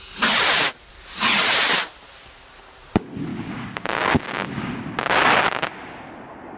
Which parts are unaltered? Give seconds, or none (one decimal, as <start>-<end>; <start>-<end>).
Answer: 0.0-3.3; 4.8-6.6